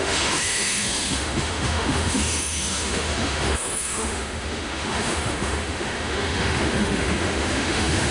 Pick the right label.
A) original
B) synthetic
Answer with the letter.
B